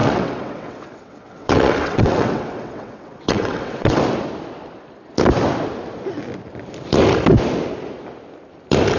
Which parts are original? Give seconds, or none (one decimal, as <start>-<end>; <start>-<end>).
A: 4.0-9.0